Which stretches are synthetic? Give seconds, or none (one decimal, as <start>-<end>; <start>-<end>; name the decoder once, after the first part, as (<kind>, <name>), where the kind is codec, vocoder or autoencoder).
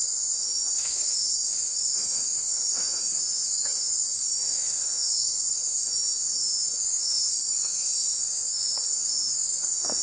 0.0-10.0 (autoencoder, DAC-VAE)